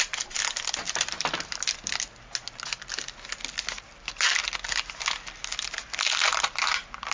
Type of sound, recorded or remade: recorded